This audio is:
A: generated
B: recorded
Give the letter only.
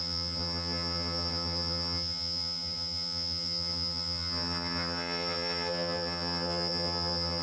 A